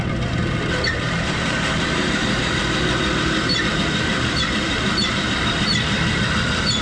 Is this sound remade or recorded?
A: remade